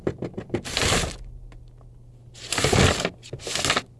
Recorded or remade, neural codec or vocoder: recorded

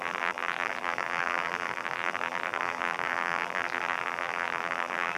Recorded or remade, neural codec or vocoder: remade, vocoder, BigVGAN v2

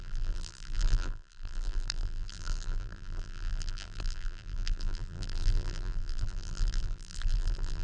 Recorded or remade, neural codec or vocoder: remade, vocoder, BigVGAN v2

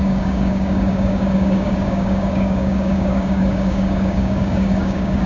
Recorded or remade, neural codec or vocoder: remade, codec, DAC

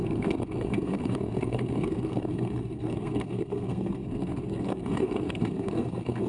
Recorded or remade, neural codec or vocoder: remade, codec, SNAC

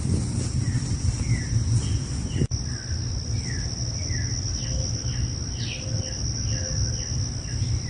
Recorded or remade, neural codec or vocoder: recorded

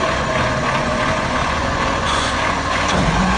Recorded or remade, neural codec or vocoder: remade, vocoder, Vocos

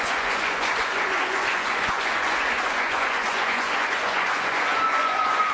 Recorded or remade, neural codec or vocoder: remade, vocoder, Vocos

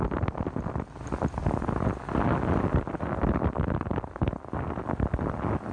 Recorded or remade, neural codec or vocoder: recorded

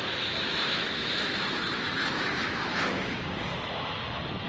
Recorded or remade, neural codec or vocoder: remade, autoencoder, DAC-VAE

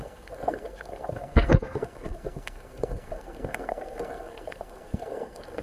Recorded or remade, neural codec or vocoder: remade, codec, SNAC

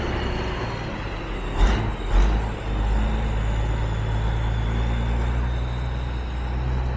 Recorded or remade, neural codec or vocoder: recorded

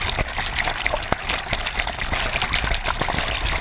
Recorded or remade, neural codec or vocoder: recorded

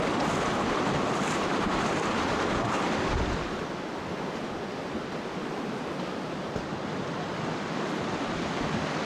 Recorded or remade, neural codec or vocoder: recorded